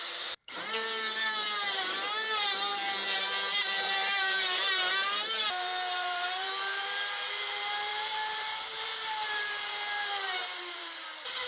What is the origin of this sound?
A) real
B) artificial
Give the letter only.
B